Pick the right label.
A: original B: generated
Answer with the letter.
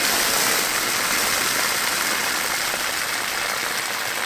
A